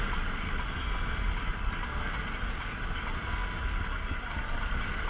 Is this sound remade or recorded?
recorded